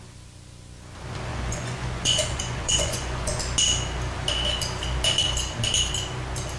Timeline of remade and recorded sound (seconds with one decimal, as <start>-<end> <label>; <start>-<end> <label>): 0.0-1.3 recorded; 1.3-3.4 remade; 3.4-6.6 recorded